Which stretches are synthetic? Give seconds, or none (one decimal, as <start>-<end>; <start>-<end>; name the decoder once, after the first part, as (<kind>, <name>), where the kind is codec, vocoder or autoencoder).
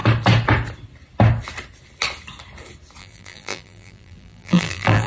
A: 3.0-5.1 (vocoder, BigVGAN v2)